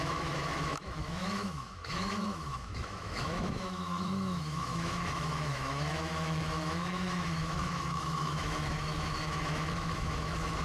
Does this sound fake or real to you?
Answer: fake